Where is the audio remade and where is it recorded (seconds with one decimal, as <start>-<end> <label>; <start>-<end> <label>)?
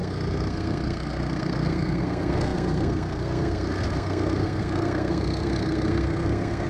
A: 0.0-6.7 remade